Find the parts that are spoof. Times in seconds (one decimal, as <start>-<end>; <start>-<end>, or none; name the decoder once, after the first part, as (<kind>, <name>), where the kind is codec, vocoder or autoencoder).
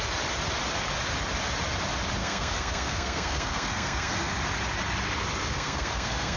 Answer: 2.2-4.3 (codec, SNAC); 5.4-6.4